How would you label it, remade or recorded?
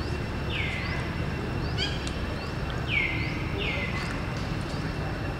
remade